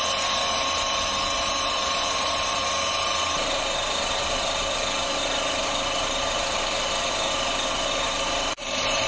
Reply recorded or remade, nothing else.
remade